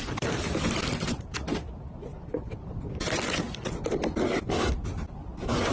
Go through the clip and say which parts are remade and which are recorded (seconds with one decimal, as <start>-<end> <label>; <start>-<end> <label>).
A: 0.0-5.7 recorded